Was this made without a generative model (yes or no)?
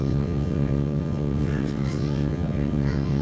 no